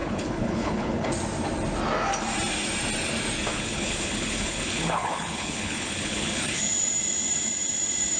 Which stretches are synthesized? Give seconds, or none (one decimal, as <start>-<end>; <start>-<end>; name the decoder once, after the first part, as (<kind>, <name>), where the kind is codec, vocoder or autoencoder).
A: 0.0-1.1 (codec, HILCodec); 3.5-6.6